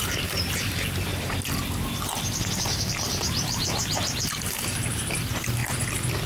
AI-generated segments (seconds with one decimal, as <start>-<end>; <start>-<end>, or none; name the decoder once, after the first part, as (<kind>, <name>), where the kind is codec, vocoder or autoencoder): 0.0-1.1 (vocoder, BigVGAN v2); 1.8-5.6

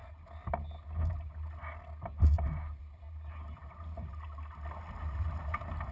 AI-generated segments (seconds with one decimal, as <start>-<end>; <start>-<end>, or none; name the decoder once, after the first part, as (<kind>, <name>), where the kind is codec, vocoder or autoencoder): none

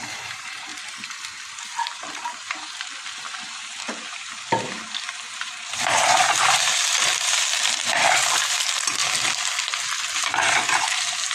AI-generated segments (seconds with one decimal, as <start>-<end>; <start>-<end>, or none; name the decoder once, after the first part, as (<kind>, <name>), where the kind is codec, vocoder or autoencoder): 0.0-0.7 (vocoder, BigVGAN v2); 1.5-9.0; 10.0-11.3

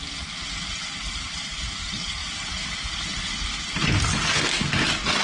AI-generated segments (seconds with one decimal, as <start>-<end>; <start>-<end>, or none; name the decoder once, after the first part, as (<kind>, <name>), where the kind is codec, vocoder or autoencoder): none

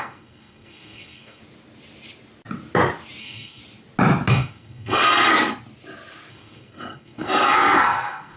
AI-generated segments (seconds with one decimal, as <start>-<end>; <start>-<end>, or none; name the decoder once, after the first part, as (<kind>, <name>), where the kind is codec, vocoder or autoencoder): 0.0-1.4 (codec, SNAC); 3.2-3.6; 4.3-5.3; 6.3-8.4

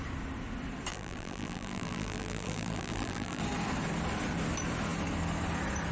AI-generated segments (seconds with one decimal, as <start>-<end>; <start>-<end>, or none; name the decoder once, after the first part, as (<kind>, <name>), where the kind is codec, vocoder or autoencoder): 0.9-3.4 (vocoder, BigVGAN v2)

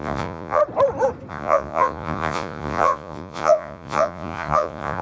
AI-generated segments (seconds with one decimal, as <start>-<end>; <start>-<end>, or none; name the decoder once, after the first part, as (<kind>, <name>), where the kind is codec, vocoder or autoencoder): 0.0-0.6 (vocoder, Vocos); 1.3-5.0

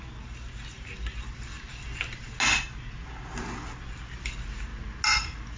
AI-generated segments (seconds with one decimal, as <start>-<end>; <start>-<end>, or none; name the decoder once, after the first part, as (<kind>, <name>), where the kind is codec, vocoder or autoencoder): none